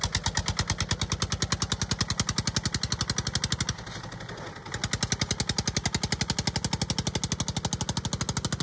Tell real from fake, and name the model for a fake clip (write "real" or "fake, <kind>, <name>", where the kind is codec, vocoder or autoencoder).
real